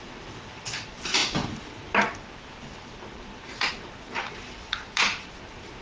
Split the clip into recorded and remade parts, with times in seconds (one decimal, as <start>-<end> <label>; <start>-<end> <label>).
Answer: 0.0-5.8 recorded